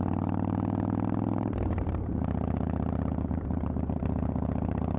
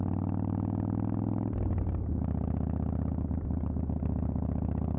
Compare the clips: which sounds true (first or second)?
second